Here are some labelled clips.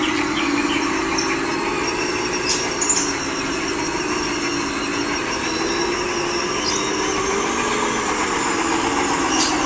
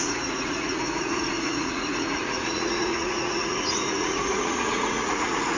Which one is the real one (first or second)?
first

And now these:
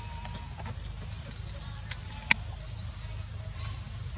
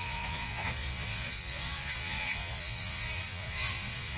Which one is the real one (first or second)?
first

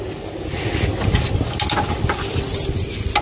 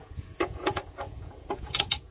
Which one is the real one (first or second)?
first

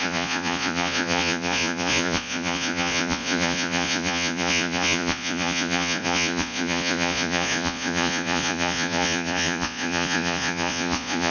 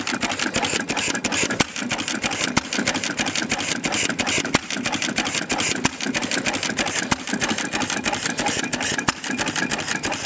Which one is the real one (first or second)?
second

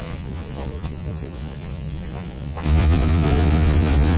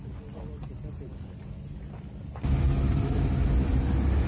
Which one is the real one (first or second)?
second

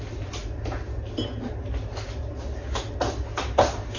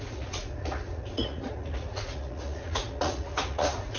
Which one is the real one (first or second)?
first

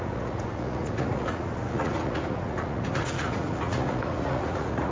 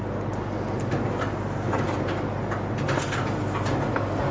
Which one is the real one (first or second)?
second